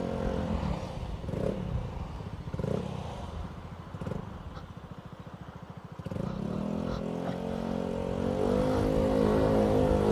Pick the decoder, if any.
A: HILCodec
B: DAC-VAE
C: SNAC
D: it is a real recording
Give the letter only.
D